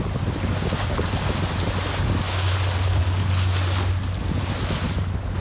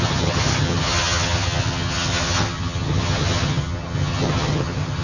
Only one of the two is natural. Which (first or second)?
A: first